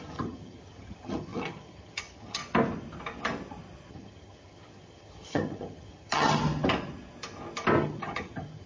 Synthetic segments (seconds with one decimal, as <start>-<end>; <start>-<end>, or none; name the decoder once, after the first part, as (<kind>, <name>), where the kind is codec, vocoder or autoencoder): 0.0-2.4 (vocoder, HiFi-GAN); 3.9-6.4; 7.8-8.7